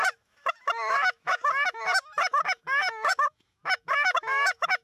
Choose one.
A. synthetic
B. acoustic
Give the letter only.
A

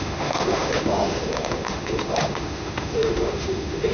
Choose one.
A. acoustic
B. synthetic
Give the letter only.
B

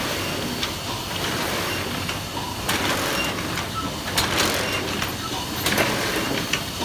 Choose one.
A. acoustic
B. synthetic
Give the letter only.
A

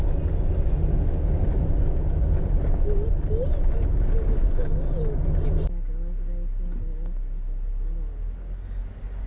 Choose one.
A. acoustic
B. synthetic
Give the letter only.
A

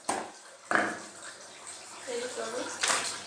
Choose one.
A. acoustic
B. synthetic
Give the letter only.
A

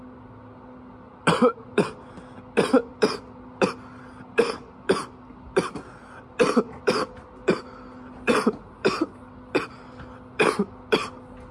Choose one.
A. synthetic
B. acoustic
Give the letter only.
B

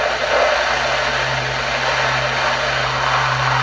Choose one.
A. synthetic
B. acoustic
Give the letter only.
B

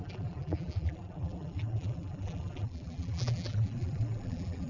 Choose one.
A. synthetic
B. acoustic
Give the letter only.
A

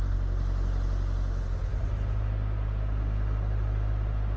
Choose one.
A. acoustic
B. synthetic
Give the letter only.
A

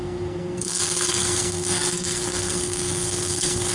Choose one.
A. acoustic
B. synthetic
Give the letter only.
B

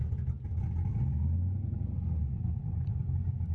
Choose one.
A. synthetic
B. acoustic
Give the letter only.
B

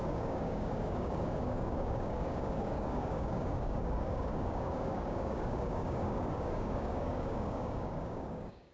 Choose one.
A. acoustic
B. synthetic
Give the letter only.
B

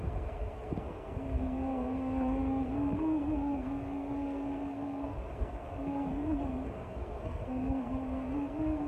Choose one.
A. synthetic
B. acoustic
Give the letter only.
A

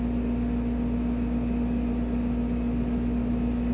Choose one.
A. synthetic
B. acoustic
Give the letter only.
B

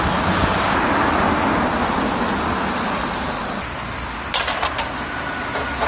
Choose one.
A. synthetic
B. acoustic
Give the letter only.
B